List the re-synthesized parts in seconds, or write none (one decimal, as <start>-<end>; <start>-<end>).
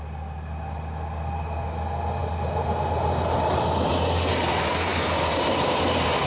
none